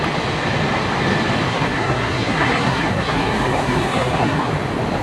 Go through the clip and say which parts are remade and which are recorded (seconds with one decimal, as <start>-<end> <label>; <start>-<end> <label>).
0.0-1.5 recorded; 1.5-4.5 remade; 4.5-5.0 recorded